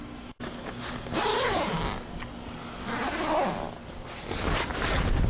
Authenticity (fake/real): real